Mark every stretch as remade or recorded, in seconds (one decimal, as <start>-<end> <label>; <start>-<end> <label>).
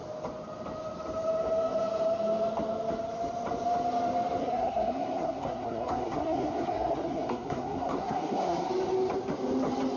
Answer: 0.0-4.4 recorded; 4.4-8.7 remade; 8.7-10.0 recorded